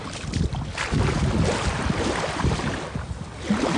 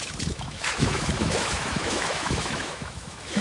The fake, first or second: second